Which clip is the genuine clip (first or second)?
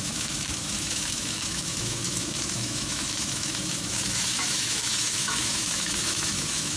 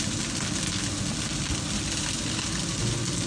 second